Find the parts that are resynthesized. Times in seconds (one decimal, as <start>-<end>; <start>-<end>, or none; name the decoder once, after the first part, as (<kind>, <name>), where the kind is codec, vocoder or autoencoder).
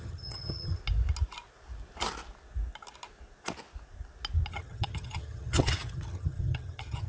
0.0-0.8 (vocoder, HiFi-GAN); 4.5-7.1